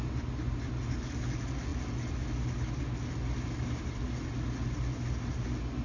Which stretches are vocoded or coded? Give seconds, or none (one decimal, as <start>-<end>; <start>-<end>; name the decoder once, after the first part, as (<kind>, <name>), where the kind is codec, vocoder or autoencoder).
none